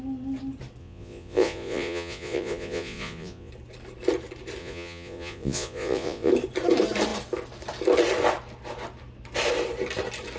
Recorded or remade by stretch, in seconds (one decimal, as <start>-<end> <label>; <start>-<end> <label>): 0.0-0.8 recorded; 0.8-3.5 remade; 3.5-4.6 recorded; 4.6-6.3 remade; 6.3-10.4 recorded